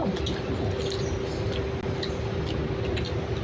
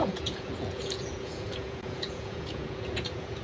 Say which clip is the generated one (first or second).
second